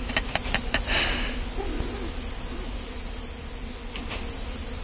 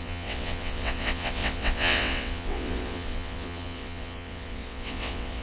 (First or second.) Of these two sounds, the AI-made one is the second